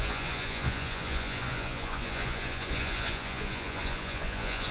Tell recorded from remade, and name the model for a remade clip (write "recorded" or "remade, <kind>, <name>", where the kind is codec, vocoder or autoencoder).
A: remade, vocoder, Vocos